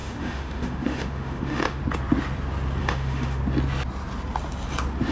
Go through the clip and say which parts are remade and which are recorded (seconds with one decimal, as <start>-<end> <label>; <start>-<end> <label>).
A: 0.0-1.8 remade; 1.8-2.8 recorded; 2.8-3.4 remade; 3.4-5.1 recorded